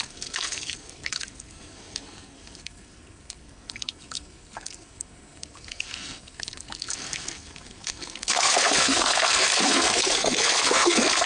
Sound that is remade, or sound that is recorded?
remade